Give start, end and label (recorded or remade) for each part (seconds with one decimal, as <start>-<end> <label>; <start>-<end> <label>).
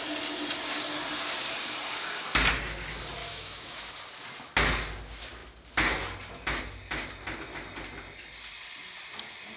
0.0-3.2 recorded; 3.2-3.9 remade; 3.9-9.6 recorded